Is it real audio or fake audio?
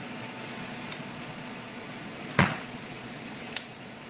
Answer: fake